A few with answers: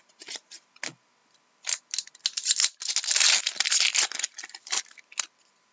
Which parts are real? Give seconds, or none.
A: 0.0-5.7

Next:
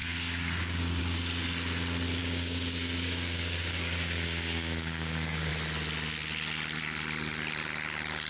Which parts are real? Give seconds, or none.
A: 1.0-2.2; 5.5-8.3

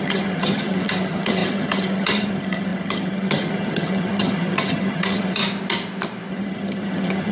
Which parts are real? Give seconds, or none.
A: 5.4-6.3